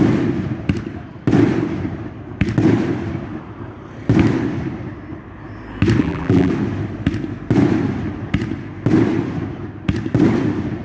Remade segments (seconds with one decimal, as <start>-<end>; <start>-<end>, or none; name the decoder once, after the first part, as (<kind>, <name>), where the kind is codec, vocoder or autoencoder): 6.0-6.5 (vocoder, BigVGAN v2)